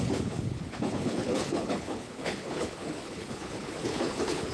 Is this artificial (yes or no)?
yes